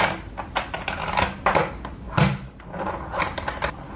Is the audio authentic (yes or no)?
yes